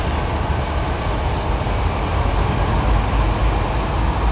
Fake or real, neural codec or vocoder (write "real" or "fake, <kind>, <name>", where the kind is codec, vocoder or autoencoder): real